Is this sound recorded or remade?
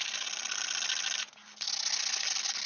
recorded